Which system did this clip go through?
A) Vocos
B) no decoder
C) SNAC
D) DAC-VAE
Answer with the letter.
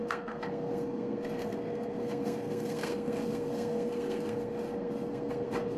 C